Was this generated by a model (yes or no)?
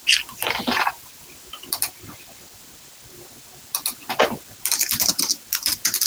yes